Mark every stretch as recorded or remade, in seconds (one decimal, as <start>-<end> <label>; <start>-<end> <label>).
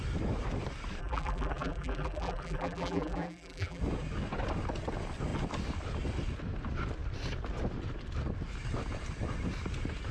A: 0.0-1.0 recorded; 1.0-3.8 remade; 3.8-10.1 recorded